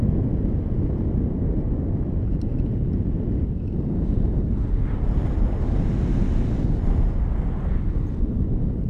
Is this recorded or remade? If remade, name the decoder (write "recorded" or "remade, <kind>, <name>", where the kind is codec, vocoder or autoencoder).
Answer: recorded